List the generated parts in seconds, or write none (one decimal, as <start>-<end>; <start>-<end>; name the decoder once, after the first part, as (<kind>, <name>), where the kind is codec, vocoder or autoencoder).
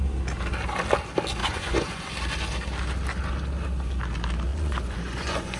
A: 1.4-2.1 (vocoder, Vocos); 4.5-5.6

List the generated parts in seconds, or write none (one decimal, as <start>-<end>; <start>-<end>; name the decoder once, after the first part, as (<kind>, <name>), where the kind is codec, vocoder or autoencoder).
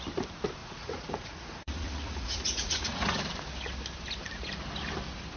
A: 0.6-3.2 (vocoder, Vocos)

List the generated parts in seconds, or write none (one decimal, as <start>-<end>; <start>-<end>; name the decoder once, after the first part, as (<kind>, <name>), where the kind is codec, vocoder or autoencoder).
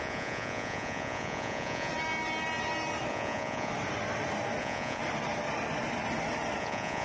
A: 0.0-1.9 (vocoder, Vocos); 3.1-3.7; 4.6-5.0; 6.6-7.0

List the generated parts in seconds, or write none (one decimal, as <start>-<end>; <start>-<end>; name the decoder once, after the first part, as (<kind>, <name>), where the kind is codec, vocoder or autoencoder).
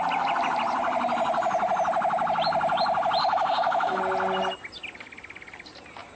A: 3.2-4.0 (autoencoder, DAC-VAE)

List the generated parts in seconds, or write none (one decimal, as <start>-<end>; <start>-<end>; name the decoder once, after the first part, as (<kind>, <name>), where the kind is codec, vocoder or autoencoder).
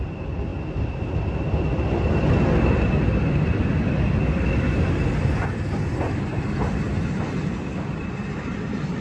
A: none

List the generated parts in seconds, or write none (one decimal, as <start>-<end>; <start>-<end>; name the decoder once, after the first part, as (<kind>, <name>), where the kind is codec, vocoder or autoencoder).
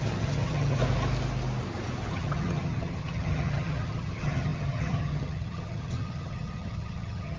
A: 0.0-0.8 (vocoder, HiFi-GAN); 2.1-7.4